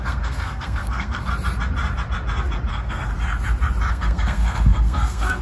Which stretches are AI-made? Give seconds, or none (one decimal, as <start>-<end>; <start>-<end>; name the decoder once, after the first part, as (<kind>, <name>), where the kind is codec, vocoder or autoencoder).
0.0-1.3 (codec, SNAC); 2.7-3.1; 3.9-5.4

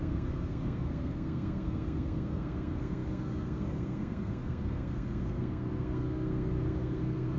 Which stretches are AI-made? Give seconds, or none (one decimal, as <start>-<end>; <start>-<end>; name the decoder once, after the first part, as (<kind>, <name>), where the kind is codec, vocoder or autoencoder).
0.0-7.4 (codec, SNAC)

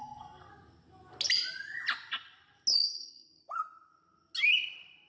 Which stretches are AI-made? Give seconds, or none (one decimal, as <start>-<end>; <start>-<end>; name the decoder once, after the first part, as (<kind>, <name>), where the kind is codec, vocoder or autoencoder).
0.0-0.5 (codec, SNAC); 2.7-3.4

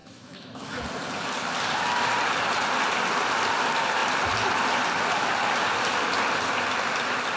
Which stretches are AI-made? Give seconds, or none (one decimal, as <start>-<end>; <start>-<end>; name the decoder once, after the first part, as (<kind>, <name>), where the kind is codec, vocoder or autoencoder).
0.0-0.8 (autoencoder, DAC-VAE)

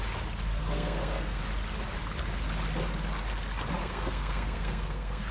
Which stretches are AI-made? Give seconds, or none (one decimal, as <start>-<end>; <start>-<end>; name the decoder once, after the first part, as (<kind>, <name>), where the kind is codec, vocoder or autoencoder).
0.6-1.4 (codec, SNAC); 3.8-5.3

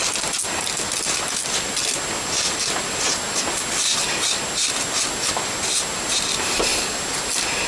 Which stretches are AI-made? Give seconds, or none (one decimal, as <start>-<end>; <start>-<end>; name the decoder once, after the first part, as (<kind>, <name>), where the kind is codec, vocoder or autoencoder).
none